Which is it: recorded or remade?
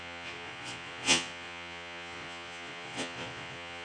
remade